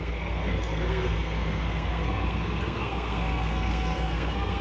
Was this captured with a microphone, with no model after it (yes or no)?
no